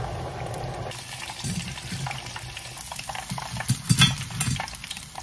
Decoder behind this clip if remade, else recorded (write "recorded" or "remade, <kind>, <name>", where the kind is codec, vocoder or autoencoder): recorded